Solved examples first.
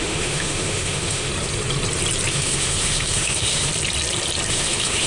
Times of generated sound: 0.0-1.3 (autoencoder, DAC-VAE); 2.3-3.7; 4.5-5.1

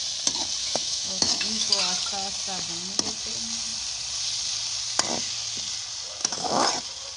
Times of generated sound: 0.6-1.8 (autoencoder, DAC-VAE); 6.2-6.7

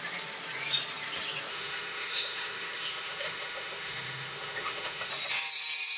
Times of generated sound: 1.5-5.1 (autoencoder, DAC-VAE)

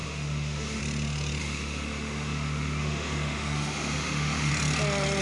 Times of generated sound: 0.0-0.8 (autoencoder, DAC-VAE); 1.4-4.5

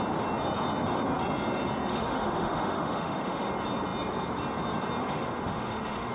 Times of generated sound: 1.9-3.5 (autoencoder, DAC-VAE); 5.0-6.1